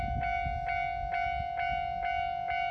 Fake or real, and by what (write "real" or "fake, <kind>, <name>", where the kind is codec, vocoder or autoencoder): real